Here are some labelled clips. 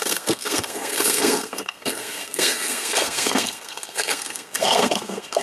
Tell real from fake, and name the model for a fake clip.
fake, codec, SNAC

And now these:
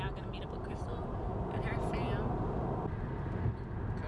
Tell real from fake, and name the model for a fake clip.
real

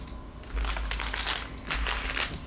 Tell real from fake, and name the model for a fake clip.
real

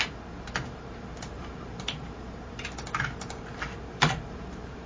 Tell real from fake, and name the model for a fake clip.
fake, vocoder, BigVGAN v2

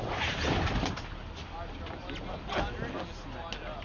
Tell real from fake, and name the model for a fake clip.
real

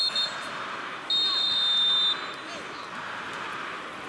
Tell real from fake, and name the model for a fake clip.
real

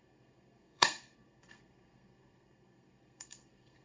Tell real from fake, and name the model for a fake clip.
fake, codec, SNAC